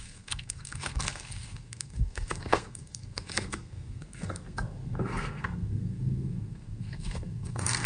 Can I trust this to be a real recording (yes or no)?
no